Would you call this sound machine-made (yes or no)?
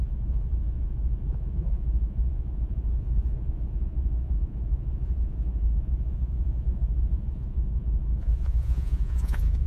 yes